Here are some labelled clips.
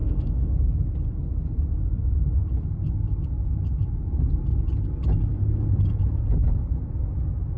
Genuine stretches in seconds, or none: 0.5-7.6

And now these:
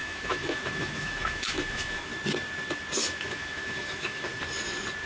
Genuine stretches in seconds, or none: 2.1-3.0; 4.3-5.1

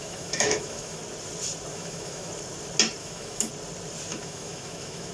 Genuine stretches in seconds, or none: 1.0-1.7; 2.3-3.0; 3.5-4.1

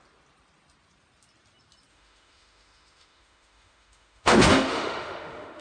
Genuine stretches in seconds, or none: 0.0-1.9

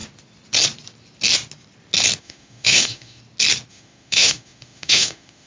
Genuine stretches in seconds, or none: 0.0-2.2; 3.2-3.7

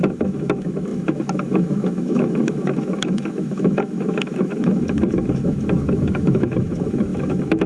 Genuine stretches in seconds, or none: none